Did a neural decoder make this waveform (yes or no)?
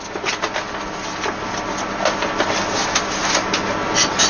no